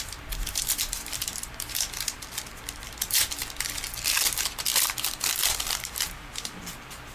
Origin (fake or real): fake